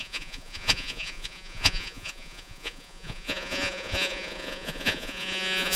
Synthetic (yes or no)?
yes